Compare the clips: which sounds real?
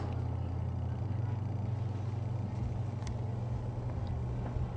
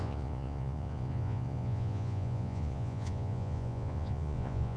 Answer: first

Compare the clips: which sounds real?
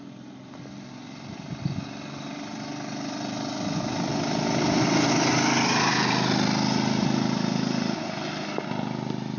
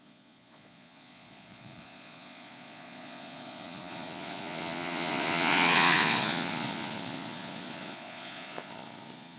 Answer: first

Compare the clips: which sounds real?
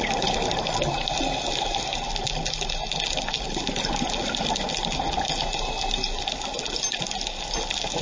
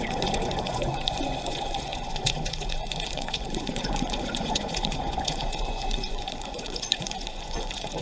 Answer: first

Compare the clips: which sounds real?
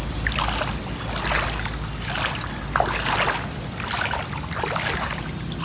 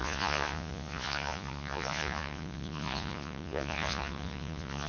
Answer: first